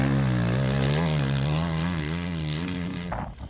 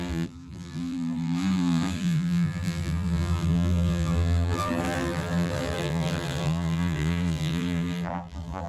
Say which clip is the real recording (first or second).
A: first